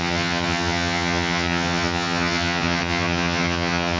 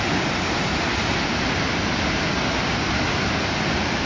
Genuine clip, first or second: second